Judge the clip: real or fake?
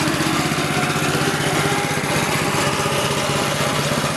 real